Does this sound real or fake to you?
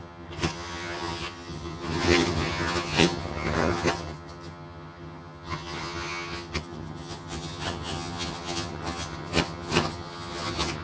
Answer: fake